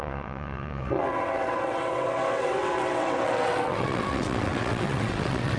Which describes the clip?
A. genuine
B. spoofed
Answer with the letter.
B